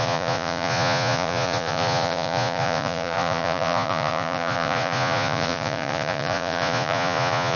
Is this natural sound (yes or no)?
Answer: no